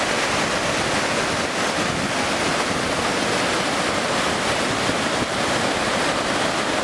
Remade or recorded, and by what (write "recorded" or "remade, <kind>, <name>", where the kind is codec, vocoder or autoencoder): recorded